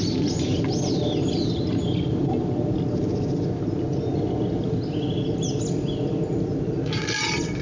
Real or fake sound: real